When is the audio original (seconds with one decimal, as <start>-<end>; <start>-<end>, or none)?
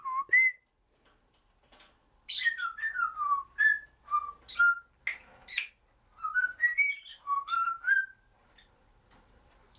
0.0-5.1; 5.7-7.1; 7.9-9.8